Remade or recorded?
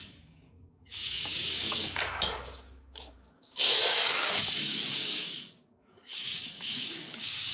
remade